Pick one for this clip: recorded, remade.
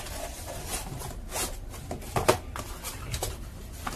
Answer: recorded